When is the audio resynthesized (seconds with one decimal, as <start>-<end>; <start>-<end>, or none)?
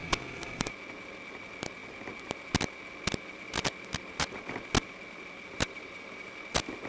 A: 0.0-0.7